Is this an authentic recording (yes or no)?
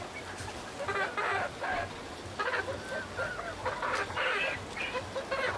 yes